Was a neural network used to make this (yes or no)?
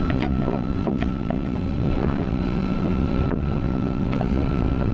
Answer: yes